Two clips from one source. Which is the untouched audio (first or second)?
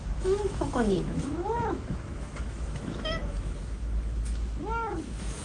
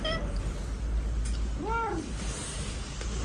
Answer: second